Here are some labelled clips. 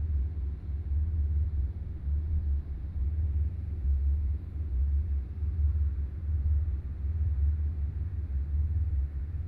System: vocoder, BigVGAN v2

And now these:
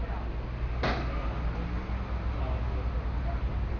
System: none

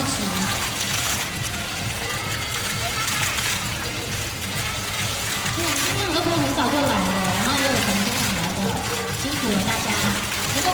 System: vocoder, Vocos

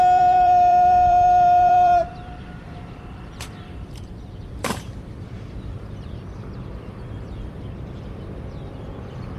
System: vocoder, BigVGAN v2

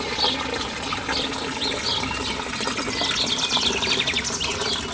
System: none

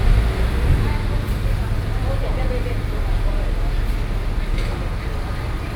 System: none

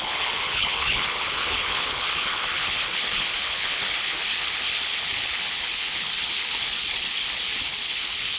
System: codec, HILCodec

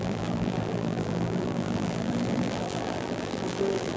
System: vocoder, BigVGAN v2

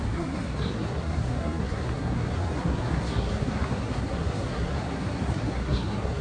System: codec, SNAC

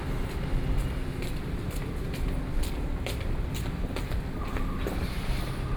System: none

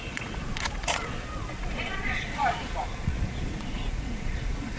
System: vocoder, Vocos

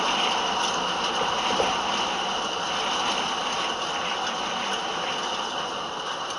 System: none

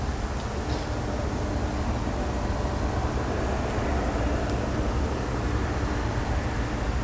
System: none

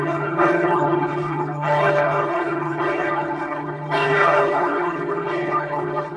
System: codec, HILCodec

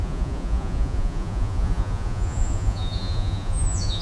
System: vocoder, Vocos